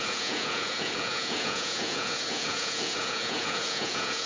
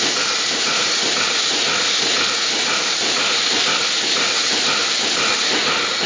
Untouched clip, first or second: second